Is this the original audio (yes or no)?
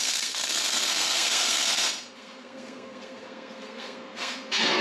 no